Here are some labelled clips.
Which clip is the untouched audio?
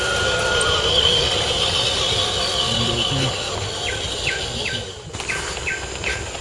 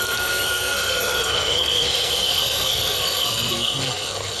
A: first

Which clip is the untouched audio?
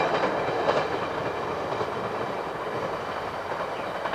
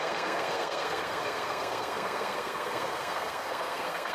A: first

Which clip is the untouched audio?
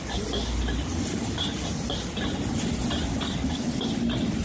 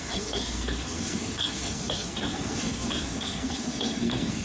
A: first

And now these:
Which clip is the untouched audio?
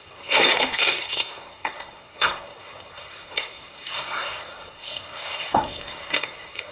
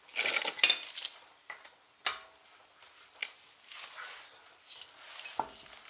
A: second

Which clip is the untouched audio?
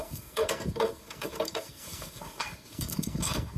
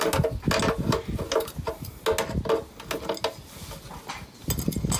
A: second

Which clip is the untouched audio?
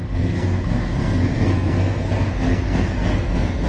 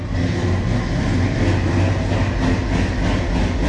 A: second